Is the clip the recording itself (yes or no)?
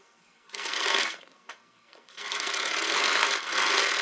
no